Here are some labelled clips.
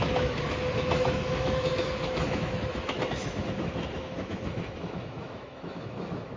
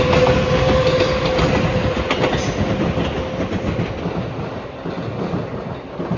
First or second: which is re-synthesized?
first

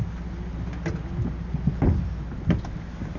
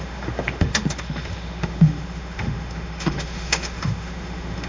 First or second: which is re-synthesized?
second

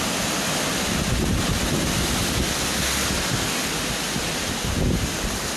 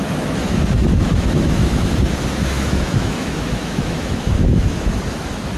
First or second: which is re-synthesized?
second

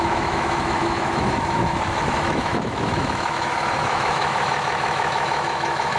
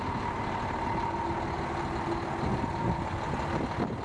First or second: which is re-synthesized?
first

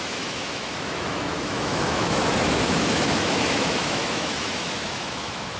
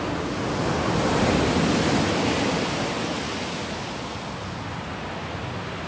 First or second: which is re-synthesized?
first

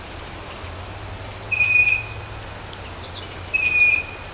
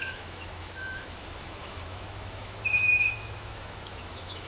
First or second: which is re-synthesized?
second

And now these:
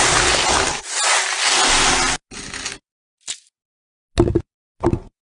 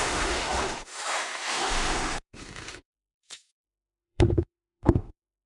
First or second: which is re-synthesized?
second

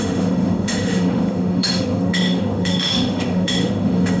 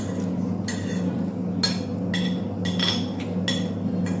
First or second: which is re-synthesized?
first